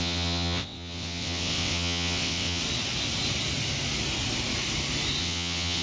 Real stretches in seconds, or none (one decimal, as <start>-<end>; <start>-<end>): 2.6-5.2